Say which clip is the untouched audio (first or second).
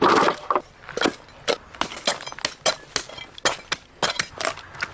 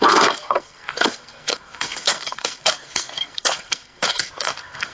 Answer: first